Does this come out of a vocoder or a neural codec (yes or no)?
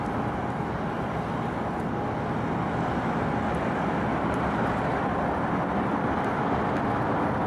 no